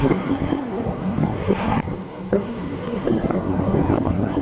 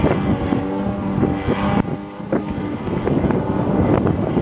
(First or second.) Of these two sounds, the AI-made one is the first